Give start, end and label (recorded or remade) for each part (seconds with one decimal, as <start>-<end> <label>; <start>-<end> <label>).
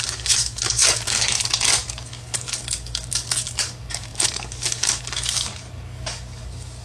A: 0.0-6.8 remade